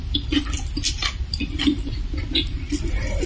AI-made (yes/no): yes